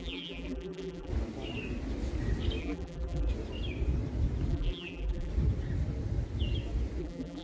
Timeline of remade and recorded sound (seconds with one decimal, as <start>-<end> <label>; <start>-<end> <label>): 0.0-1.1 remade; 1.1-2.6 recorded; 2.6-3.3 remade; 3.3-4.5 recorded; 4.5-5.3 remade; 5.3-7.0 recorded; 7.0-7.4 remade